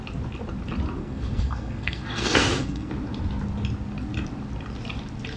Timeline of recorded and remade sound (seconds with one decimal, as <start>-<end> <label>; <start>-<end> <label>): 0.0-1.0 recorded; 1.0-2.9 remade; 2.9-5.4 recorded